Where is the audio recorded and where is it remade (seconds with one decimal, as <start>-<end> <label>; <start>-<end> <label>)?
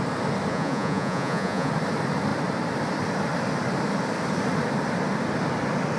0.0-0.5 recorded; 0.5-1.7 remade; 1.7-6.0 recorded